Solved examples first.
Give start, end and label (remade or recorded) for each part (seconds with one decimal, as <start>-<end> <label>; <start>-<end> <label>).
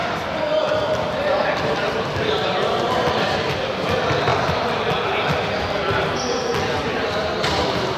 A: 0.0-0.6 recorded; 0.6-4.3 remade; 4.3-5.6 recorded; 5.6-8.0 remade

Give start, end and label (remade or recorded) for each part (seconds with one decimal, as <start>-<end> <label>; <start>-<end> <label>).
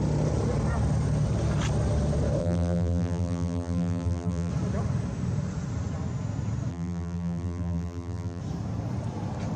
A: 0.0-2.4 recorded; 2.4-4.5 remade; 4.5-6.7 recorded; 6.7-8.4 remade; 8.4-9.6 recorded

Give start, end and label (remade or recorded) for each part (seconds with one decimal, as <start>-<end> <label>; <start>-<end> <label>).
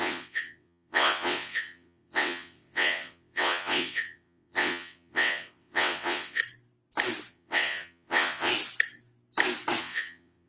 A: 0.0-6.4 remade; 6.4-7.3 recorded; 7.3-8.5 remade; 8.5-9.8 recorded; 9.8-10.5 remade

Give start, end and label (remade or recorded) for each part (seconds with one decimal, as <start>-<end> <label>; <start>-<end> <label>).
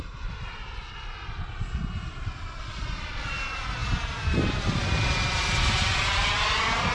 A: 0.0-6.9 recorded